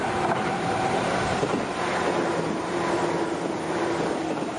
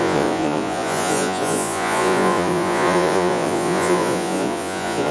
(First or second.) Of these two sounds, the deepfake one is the second